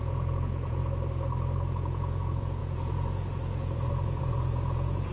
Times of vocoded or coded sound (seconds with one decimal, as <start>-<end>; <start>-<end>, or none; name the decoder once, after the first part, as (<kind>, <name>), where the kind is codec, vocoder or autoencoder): 0.0-0.8 (vocoder, Vocos); 1.7-5.1